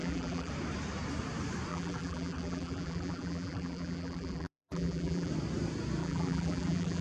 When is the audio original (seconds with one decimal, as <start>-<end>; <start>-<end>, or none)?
0.5-1.7; 5.3-6.0